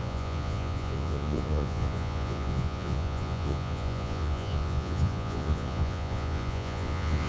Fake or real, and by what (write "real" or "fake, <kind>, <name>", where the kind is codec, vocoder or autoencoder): fake, vocoder, Vocos